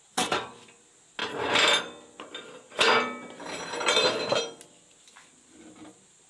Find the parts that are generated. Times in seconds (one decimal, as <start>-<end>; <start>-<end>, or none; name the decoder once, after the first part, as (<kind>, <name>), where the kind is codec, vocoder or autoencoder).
none